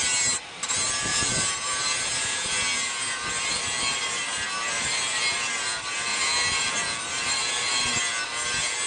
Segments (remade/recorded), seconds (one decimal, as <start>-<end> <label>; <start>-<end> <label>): 0.0-1.1 recorded; 1.1-3.3 remade; 3.3-6.1 recorded; 6.1-6.7 remade; 6.7-8.9 recorded